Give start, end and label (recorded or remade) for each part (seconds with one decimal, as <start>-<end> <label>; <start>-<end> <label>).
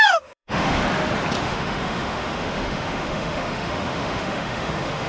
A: 0.0-0.8 remade; 0.8-1.4 recorded; 1.4-5.1 remade